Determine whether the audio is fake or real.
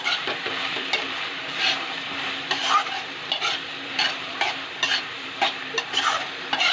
fake